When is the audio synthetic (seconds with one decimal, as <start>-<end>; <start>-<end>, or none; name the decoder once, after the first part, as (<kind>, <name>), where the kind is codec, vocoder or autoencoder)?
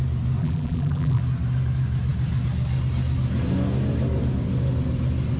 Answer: 0.4-1.2 (vocoder, BigVGAN v2)